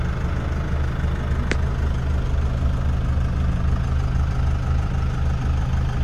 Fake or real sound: real